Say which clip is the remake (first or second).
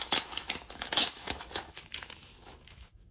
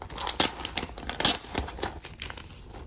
first